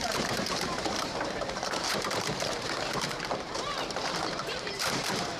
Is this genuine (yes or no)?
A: no